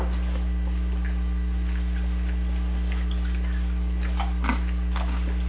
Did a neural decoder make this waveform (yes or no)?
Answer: no